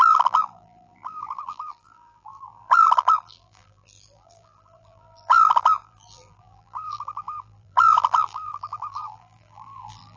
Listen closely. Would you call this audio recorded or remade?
remade